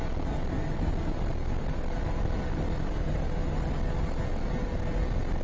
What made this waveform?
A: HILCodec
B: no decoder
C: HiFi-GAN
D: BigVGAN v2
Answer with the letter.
B